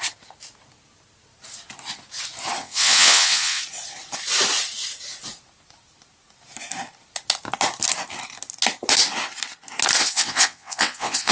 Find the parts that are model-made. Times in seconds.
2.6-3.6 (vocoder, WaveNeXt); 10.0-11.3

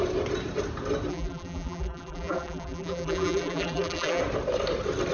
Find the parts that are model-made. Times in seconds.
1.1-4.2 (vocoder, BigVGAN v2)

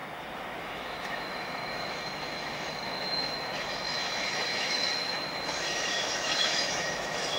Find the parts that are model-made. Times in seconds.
0.6-7.4 (autoencoder, DAC-VAE)